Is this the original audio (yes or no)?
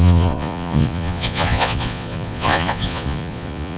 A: no